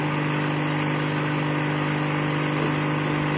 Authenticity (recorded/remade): recorded